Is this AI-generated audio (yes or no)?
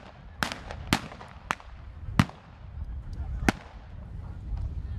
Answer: no